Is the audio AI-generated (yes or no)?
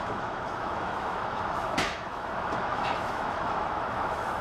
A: yes